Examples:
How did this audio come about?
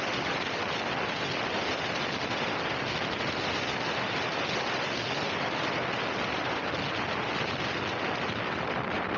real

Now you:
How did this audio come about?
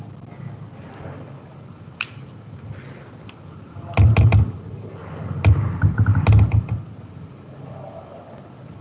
real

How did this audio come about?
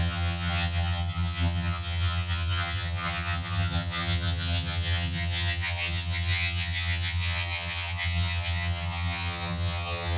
fake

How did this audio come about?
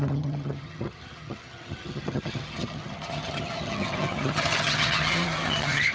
fake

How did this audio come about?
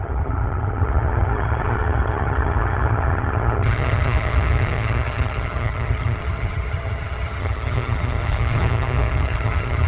fake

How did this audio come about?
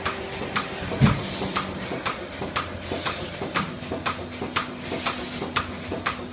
real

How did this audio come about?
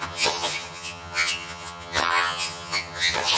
fake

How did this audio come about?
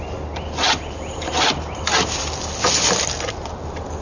real